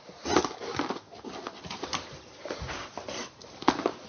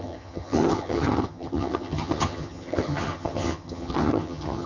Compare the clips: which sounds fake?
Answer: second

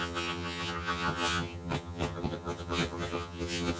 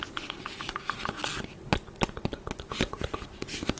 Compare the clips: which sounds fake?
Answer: first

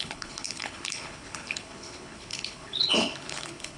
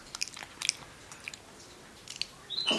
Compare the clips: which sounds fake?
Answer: first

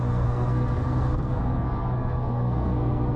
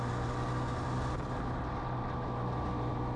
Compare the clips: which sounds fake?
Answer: first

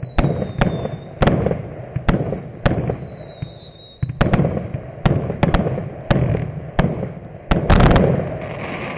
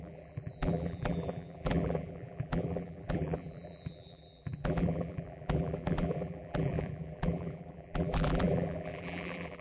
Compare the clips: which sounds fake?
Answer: second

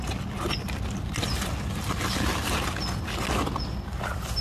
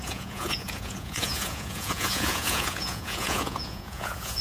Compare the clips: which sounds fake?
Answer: second